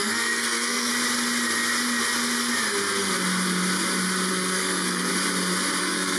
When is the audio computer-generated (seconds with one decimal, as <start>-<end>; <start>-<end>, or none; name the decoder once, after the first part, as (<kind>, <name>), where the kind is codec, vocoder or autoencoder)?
0.0-0.9 (codec, SNAC); 4.3-5.1; 5.8-6.2